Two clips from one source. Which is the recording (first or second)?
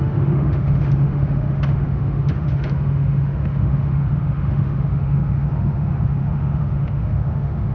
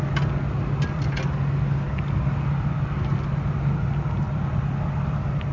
second